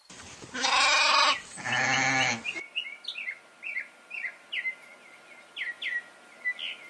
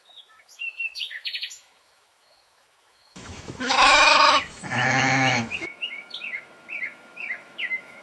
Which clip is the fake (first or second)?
second